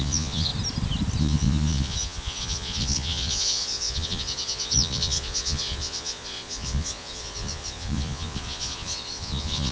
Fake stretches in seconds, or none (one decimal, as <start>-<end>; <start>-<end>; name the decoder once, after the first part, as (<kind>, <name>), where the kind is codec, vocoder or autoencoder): 0.0-0.5 (vocoder, Vocos); 1.2-9.7